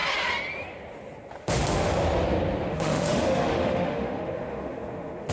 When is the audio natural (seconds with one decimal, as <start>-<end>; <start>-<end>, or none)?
0.0-1.4; 1.9-2.7